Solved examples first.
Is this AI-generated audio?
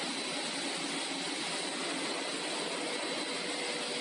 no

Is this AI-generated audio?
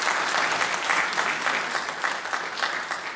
no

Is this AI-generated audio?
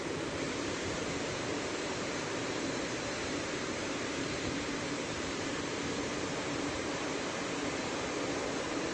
yes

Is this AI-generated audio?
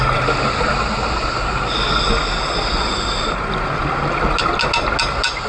no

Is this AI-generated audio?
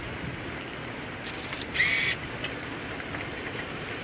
no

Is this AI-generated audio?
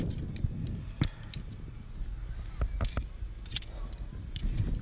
no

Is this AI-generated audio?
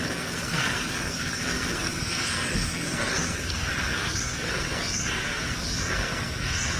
yes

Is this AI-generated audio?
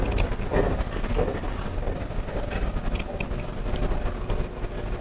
no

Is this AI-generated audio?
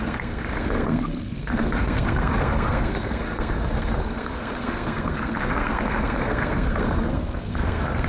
yes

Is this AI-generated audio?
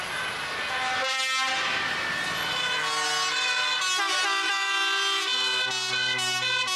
no